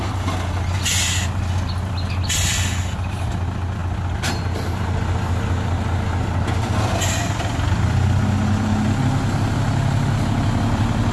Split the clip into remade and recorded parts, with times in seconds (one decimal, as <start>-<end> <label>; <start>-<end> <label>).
0.0-11.1 recorded